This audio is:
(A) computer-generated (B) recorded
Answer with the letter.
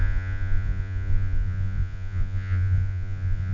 A